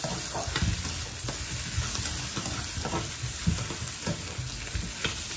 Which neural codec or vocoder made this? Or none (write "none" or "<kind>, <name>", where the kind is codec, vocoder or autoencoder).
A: none